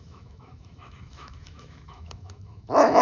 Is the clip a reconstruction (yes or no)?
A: yes